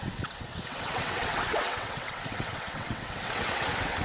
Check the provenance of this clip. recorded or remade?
remade